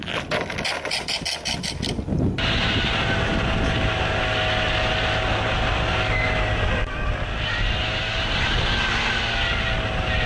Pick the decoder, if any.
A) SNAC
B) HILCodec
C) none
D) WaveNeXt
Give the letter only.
C